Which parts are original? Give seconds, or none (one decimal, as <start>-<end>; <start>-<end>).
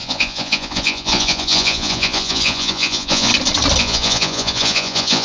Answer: 3.3-3.8